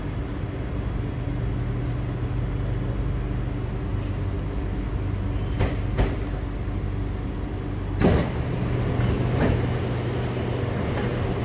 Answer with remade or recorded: recorded